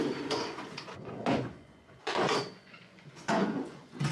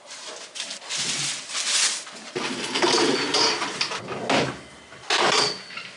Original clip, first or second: second